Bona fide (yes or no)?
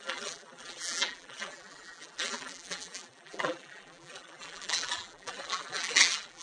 no